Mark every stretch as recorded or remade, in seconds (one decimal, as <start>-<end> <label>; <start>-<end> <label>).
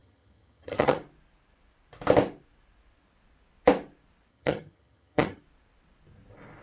0.0-1.0 remade; 1.0-4.3 recorded; 4.3-5.4 remade; 5.4-6.6 recorded